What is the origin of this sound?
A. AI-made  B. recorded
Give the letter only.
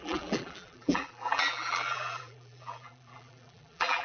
A